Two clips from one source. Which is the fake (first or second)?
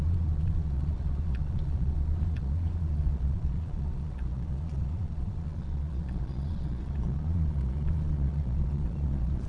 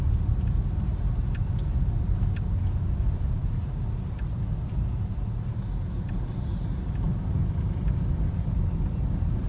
first